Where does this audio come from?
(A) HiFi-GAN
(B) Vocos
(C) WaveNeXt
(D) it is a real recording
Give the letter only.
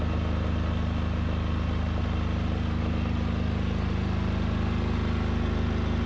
D